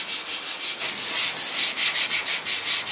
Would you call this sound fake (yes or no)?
no